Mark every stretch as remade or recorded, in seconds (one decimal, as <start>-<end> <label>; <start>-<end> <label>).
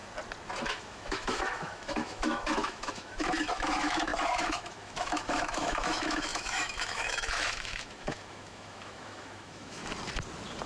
0.0-0.6 recorded; 0.6-9.8 remade; 9.8-10.7 recorded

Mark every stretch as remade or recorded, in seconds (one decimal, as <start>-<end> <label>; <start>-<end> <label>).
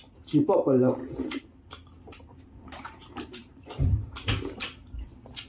0.0-1.0 remade; 1.0-2.4 recorded; 2.4-5.5 remade